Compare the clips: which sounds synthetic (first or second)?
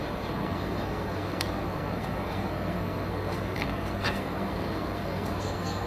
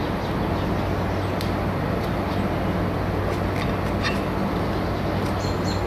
first